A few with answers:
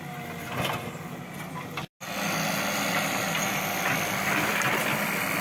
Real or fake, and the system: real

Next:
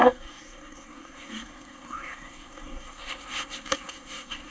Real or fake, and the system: fake, codec, SNAC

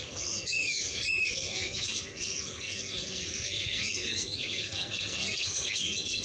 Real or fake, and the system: fake, codec, SNAC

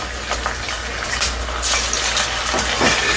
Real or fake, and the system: real